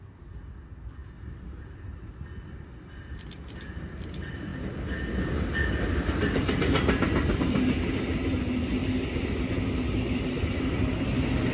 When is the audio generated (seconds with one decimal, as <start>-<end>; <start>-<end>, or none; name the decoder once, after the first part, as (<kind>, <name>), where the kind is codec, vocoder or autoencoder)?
none